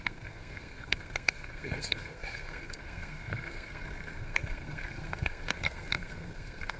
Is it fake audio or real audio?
fake